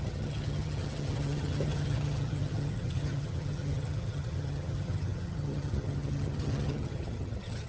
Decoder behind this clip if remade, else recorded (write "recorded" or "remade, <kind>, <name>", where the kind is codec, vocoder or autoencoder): remade, vocoder, HiFi-GAN